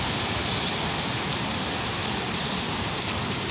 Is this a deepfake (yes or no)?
no